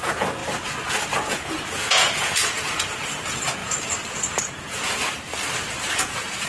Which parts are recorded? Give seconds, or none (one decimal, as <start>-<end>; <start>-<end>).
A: 0.4-1.1; 3.6-4.4; 5.3-5.9